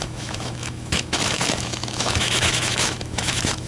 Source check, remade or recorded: remade